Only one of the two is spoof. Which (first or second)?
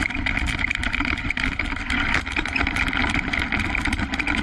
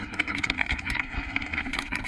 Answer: second